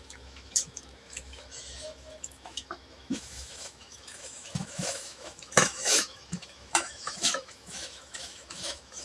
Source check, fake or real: fake